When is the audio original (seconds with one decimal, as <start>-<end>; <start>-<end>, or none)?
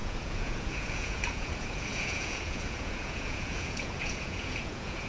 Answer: none